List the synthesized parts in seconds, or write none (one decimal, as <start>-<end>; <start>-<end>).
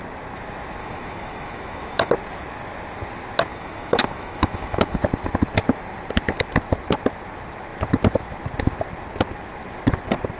0.8-2.1; 3.5-5.0